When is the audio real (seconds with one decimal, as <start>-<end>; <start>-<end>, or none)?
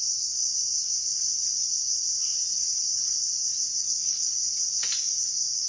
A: 0.4-3.8; 4.4-5.0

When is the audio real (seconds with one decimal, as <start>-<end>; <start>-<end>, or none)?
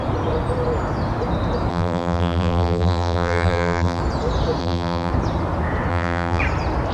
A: 0.0-1.7; 4.0-4.6; 5.1-5.9; 6.4-6.9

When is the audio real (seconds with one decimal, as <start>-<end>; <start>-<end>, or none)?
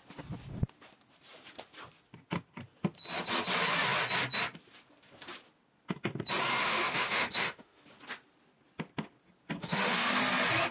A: 0.0-6.6; 7.8-9.6; 10.2-10.7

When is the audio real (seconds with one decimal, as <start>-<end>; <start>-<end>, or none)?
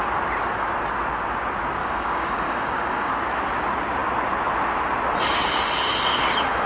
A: 0.0-1.8; 3.1-6.7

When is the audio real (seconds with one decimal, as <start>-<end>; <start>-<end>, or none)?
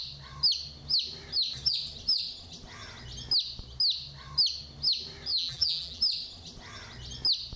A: 0.0-5.3; 6.0-7.6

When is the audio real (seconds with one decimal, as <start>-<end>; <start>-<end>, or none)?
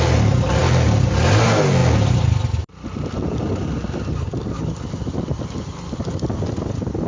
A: 0.0-7.1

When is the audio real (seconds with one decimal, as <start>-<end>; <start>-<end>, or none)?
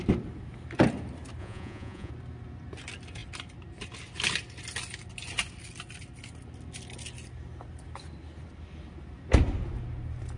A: 0.0-1.4; 2.1-10.4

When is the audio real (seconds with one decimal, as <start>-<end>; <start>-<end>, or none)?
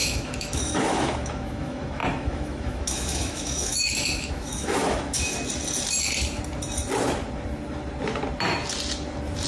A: 5.3-9.5